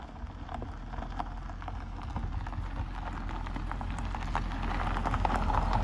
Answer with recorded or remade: recorded